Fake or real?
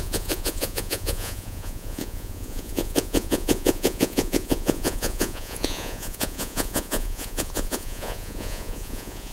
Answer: fake